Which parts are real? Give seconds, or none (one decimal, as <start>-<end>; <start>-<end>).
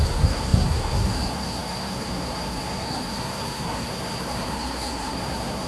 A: none